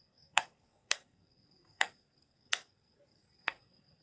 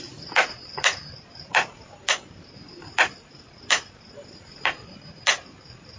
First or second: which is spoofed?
first